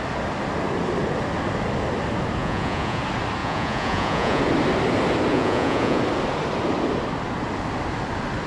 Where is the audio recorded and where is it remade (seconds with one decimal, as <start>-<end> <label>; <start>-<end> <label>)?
0.0-2.4 recorded; 2.4-3.0 remade; 3.0-3.4 recorded; 3.4-4.4 remade; 4.4-5.3 recorded; 5.3-6.0 remade; 6.0-8.5 recorded